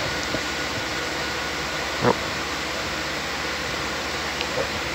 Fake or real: real